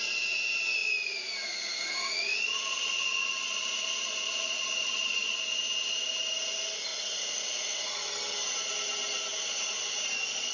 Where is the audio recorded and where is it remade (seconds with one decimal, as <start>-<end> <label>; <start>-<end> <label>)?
0.0-0.8 recorded; 0.8-5.4 remade; 5.4-6.9 recorded; 6.9-8.1 remade; 8.1-10.5 recorded